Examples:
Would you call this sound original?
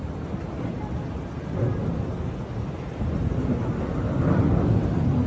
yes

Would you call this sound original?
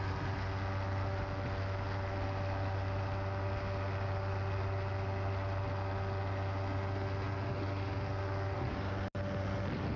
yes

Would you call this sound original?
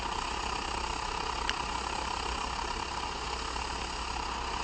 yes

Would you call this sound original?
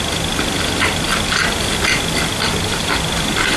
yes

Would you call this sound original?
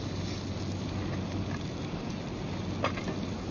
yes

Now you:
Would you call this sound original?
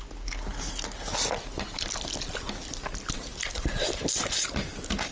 yes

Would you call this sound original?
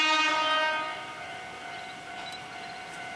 no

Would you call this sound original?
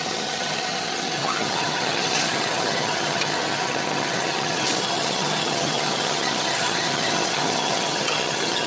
no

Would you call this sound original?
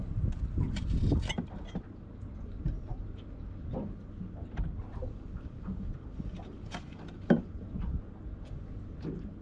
yes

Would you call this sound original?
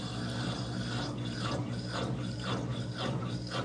yes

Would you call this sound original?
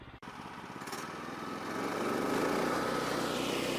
yes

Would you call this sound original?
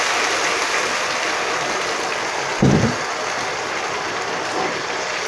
yes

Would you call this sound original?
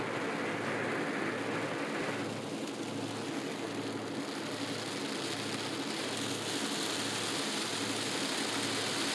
yes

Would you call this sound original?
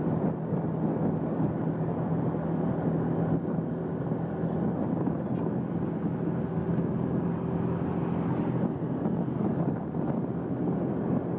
yes